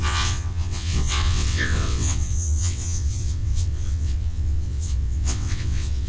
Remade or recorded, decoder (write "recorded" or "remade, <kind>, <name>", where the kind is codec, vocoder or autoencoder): remade, vocoder, WaveNeXt